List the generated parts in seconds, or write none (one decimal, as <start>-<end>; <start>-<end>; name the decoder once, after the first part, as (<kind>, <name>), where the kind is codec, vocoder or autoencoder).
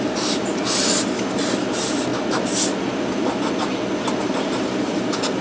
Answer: 0.0-2.1 (vocoder, BigVGAN v2); 4.2-5.4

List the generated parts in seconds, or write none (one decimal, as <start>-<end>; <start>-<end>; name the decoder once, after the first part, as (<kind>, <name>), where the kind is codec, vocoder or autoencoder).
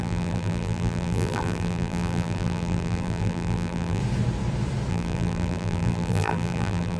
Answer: 0.0-4.0 (vocoder, BigVGAN v2); 4.9-7.0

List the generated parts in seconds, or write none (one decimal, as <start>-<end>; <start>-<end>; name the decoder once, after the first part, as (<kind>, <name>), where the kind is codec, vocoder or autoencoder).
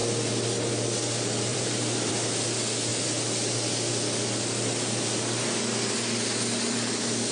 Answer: 1.5-2.1 (vocoder, BigVGAN v2)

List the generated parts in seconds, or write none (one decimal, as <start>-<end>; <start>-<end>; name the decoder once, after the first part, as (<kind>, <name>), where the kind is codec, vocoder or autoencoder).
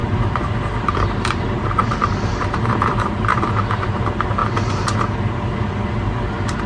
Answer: 0.0-2.6 (vocoder, BigVGAN v2)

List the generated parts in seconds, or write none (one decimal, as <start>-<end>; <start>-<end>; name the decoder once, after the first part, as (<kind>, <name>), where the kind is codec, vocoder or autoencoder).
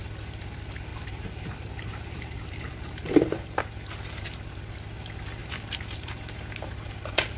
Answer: 0.9-3.6 (vocoder, BigVGAN v2); 5.4-6.2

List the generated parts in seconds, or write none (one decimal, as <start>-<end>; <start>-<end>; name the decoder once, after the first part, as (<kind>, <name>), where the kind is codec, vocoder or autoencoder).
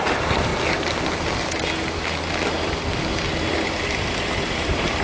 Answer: 0.0-0.5 (vocoder, BigVGAN v2); 3.5-5.0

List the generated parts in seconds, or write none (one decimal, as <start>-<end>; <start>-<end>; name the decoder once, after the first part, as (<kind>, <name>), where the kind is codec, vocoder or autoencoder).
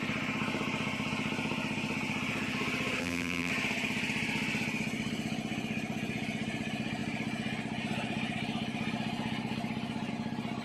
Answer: 3.0-3.5 (vocoder, BigVGAN v2)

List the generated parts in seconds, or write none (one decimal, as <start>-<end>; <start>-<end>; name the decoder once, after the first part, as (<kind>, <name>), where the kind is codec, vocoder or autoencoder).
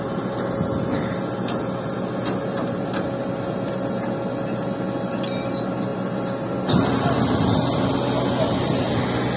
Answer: none